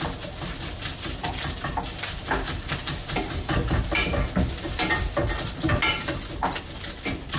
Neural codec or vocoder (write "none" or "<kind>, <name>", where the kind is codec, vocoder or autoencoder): none